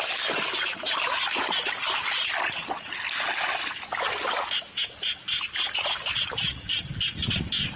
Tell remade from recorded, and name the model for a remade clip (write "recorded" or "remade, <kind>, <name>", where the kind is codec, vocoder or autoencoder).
recorded